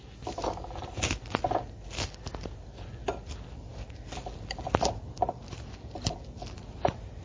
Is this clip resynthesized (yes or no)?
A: no